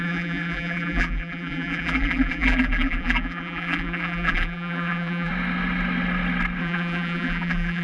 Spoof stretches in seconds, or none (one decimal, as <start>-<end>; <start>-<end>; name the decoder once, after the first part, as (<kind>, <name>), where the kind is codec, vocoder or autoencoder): 0.0-5.3 (vocoder, BigVGAN v2); 6.6-7.8